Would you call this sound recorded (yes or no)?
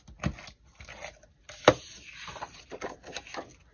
yes